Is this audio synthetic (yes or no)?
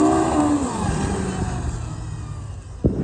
no